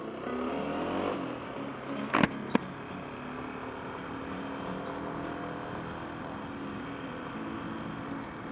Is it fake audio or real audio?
real